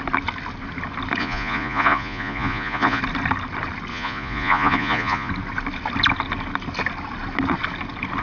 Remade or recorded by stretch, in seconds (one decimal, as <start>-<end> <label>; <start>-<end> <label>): 0.0-1.2 recorded; 1.2-3.0 remade; 3.0-3.9 recorded; 3.9-5.3 remade; 5.3-8.2 recorded